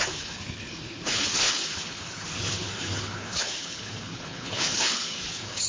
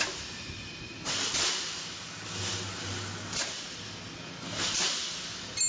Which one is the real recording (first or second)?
second